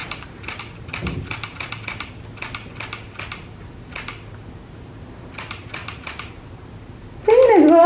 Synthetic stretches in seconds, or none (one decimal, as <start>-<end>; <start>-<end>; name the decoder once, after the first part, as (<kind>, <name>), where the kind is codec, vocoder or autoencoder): 0.0-0.6 (vocoder, BigVGAN v2); 1.0-1.7; 5.8-6.7